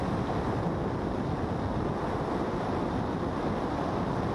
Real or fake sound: real